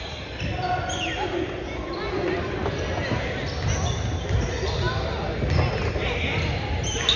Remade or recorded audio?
recorded